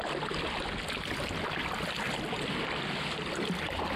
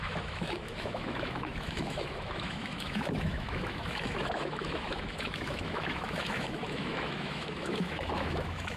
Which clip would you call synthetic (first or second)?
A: second